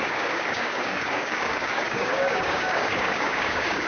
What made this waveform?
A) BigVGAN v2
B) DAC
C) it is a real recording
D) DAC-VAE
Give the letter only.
B